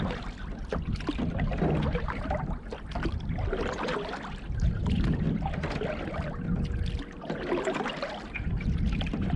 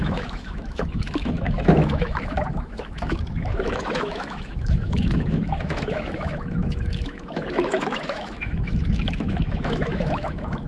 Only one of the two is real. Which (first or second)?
first